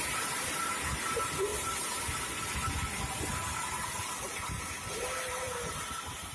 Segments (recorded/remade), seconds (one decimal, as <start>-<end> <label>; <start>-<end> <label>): 0.0-1.5 remade; 1.5-5.3 recorded; 5.3-6.3 remade